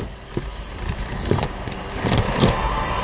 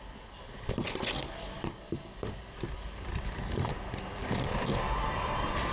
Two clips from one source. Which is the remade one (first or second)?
second